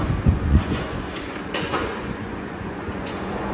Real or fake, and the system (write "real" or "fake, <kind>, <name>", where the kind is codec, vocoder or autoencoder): fake, vocoder, Vocos